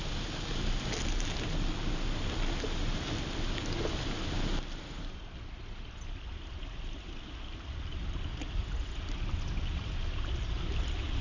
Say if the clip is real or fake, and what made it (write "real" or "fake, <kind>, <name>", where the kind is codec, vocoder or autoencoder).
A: real